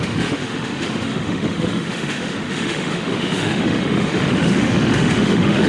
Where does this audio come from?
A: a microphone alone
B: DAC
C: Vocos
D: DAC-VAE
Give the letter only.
D